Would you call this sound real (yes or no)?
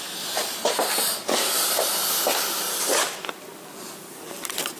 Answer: yes